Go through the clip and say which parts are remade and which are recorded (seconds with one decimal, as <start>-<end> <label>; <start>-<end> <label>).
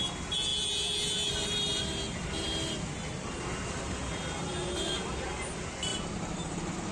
0.0-6.9 recorded